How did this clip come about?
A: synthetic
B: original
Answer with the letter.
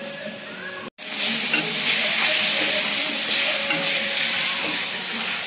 B